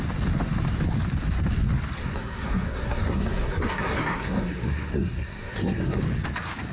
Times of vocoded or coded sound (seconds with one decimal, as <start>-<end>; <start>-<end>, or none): 2.0-6.0